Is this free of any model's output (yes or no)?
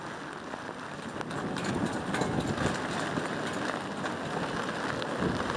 yes